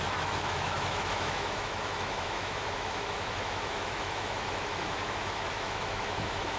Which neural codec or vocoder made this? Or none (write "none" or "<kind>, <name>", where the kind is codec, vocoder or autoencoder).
autoencoder, DAC-VAE